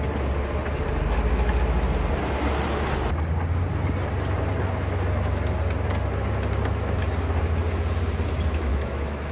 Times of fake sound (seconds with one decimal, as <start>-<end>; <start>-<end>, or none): 8.7-9.3